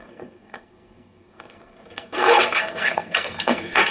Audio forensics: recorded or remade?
remade